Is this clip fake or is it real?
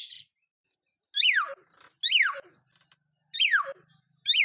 real